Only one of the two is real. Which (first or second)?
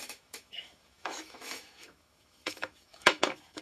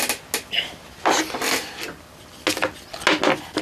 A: second